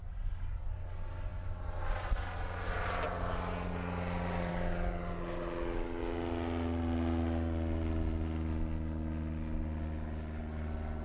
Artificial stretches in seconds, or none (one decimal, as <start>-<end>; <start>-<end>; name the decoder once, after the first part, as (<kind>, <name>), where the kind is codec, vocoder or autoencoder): none